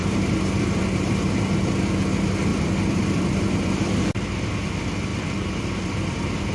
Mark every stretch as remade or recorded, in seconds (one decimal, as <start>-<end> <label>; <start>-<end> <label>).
0.0-2.5 recorded; 2.5-4.5 remade; 4.5-5.1 recorded; 5.1-6.5 remade